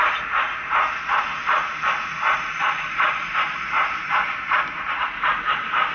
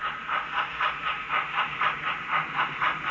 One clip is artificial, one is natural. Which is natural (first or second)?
second